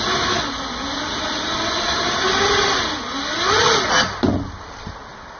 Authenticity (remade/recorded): recorded